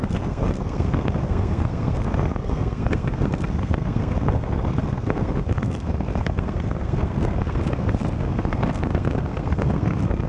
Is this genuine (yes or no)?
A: no